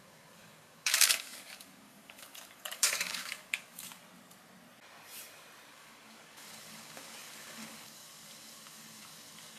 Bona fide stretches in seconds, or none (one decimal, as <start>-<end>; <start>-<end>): 4.0-5.7